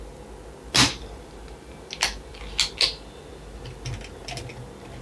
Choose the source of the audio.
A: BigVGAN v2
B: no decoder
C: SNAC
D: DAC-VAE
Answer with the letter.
B